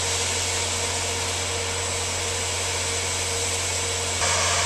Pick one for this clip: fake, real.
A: real